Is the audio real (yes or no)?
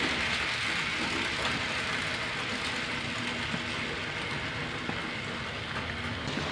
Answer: yes